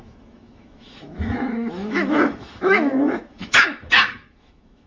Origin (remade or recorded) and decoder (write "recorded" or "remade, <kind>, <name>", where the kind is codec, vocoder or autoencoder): remade, autoencoder, DAC-VAE